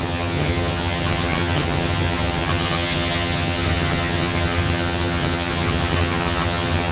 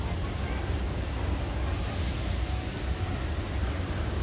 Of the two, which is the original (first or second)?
second